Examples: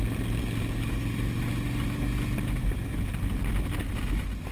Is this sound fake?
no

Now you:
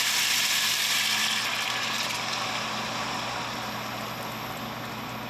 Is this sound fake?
no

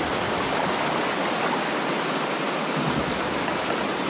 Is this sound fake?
no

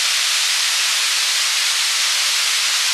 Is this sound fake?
no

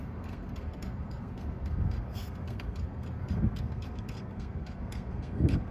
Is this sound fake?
yes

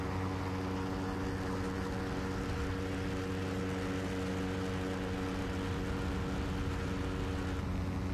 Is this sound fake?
no